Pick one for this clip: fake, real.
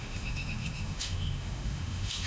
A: fake